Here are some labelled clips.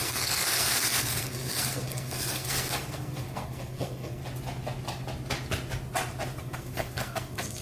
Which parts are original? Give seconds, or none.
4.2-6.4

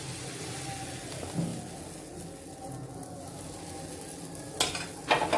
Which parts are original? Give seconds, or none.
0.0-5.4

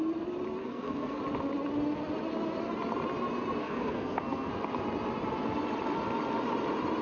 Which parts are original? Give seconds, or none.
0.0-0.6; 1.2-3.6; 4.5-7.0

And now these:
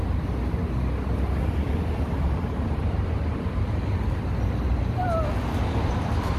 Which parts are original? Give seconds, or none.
0.0-6.4